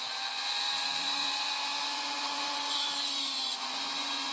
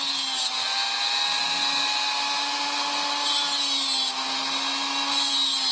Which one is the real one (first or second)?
second